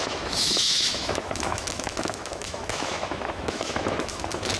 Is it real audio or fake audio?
fake